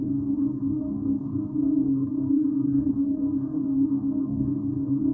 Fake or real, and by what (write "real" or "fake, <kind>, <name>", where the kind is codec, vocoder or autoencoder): fake, codec, DAC